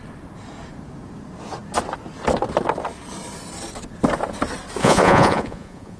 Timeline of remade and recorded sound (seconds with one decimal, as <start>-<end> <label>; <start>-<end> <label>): 0.0-4.8 recorded; 4.8-6.0 remade